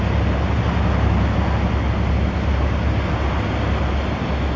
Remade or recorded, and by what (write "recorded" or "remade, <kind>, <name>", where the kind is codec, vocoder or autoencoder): recorded